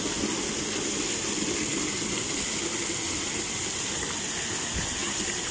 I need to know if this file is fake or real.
real